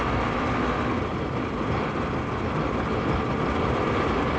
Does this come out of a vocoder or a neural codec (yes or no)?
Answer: no